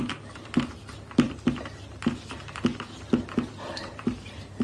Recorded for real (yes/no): no